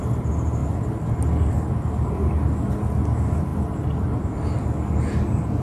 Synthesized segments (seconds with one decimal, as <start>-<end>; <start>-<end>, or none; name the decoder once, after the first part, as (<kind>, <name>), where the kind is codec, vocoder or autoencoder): none